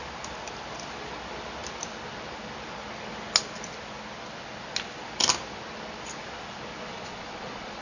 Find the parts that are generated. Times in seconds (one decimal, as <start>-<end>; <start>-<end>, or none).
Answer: 6.9-7.8